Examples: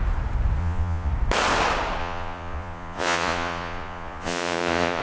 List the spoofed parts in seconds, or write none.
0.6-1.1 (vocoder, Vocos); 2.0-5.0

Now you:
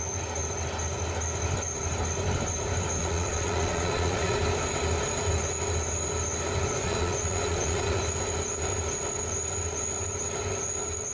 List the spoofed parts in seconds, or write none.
3.0-4.4 (vocoder, Vocos); 6.8-8.0

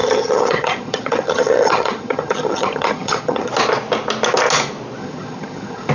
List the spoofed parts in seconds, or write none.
0.0-3.5 (vocoder, HiFi-GAN); 5.0-5.9

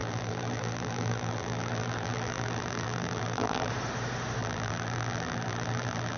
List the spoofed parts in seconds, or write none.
0.0-3.7 (vocoder, BigVGAN v2); 4.4-6.2

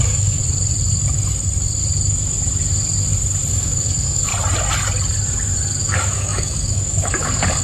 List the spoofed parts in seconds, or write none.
0.0-0.4 (codec, DAC); 3.5-4.3; 5.8-7.6

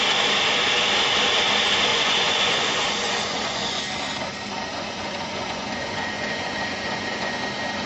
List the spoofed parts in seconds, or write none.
1.9-3.8 (vocoder, Vocos); 4.7-7.4

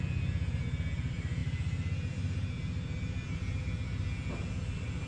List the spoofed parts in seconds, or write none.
none